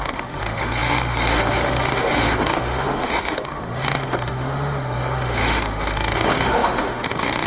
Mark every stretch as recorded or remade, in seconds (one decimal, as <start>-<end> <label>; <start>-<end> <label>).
0.0-7.5 remade